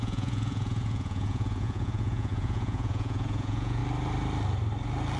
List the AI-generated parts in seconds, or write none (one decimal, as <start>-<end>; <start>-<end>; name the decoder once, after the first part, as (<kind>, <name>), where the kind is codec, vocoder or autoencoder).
0.0-3.8 (vocoder, Vocos)